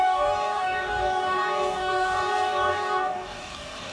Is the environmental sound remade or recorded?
remade